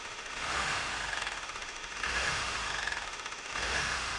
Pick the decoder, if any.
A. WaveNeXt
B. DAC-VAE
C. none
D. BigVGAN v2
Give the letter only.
B